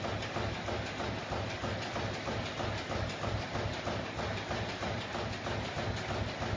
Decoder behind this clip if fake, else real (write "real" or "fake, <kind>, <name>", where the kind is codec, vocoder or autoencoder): real